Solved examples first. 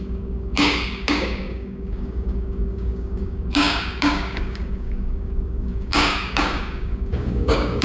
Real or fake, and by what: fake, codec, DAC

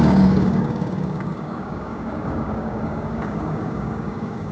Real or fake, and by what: fake, codec, DAC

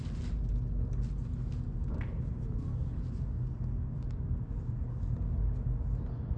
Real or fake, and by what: real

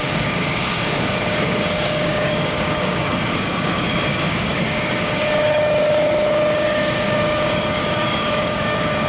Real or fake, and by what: fake, codec, DAC